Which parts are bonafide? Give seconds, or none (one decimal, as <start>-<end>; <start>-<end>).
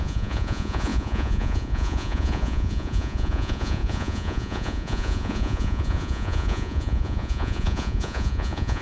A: none